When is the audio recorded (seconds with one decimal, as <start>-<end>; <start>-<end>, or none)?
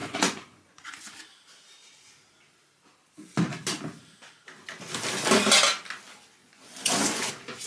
1.2-6.4; 7.3-7.7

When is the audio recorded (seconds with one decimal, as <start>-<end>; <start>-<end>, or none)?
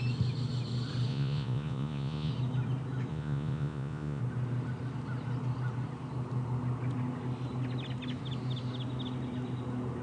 0.0-1.1; 2.3-3.1; 4.2-10.0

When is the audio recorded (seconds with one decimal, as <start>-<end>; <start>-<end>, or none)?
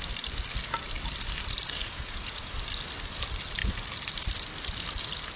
0.0-1.8; 2.5-5.4